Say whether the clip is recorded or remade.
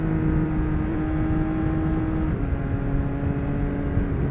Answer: recorded